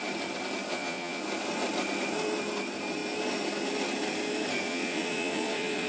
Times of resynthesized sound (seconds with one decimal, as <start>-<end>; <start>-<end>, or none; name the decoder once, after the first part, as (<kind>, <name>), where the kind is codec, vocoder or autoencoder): 0.7-1.2 (vocoder, Vocos); 4.7-5.9